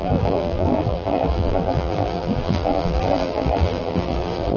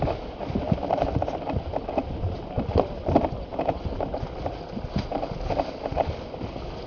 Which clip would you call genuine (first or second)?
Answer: second